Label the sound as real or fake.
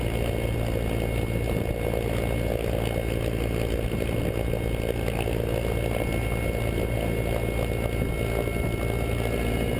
real